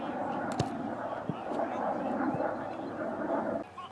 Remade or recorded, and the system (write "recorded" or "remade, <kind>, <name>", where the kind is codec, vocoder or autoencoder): recorded